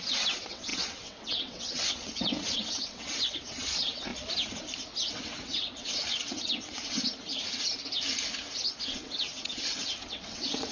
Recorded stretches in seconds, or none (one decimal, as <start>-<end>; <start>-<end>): 4.1-5.1; 7.0-8.8